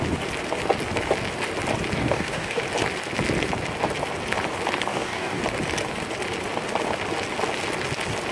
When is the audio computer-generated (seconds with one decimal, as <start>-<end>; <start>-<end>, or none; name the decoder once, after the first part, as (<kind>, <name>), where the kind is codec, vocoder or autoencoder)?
2.0-2.6 (codec, DAC); 4.9-5.4